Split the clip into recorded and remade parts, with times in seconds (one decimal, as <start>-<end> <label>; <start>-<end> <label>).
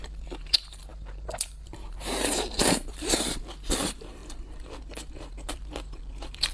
0.0-4.2 remade; 4.2-5.1 recorded; 5.1-6.5 remade